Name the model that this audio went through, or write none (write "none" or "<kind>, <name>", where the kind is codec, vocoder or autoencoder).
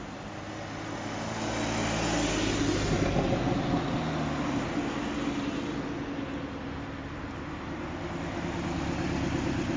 none